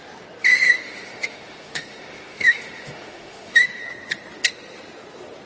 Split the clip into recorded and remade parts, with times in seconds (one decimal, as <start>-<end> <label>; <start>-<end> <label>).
0.0-0.5 recorded; 0.5-3.8 remade; 3.8-5.5 recorded